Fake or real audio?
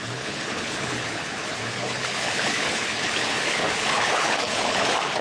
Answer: fake